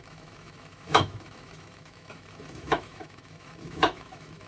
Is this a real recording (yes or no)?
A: no